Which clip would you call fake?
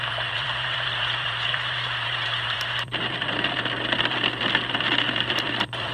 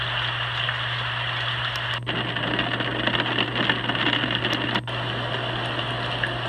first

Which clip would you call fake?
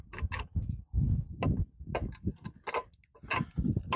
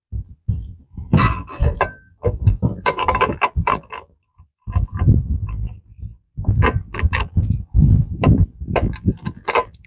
second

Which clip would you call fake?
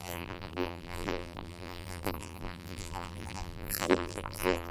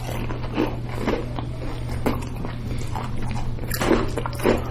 first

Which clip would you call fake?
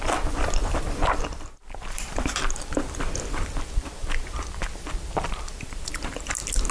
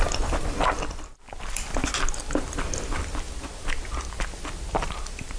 first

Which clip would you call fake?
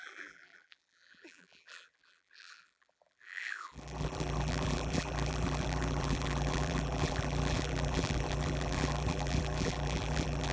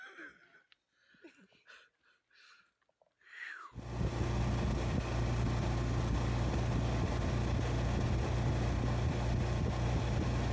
first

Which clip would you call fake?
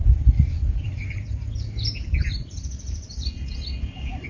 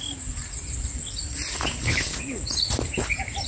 first